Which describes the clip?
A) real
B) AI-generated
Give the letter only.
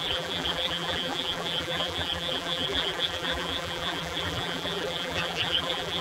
B